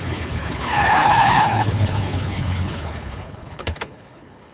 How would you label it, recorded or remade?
remade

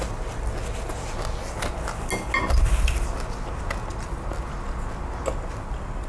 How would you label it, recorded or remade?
recorded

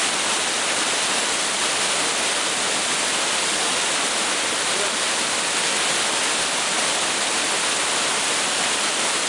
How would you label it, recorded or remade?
recorded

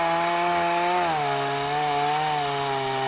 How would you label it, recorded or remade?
recorded